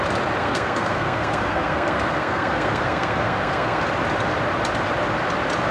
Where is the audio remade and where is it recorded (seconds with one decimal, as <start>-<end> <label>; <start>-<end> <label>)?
0.0-0.4 recorded; 0.4-3.8 remade; 3.8-5.7 recorded